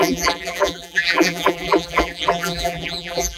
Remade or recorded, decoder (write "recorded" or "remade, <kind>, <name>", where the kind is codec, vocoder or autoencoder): remade, vocoder, BigVGAN v2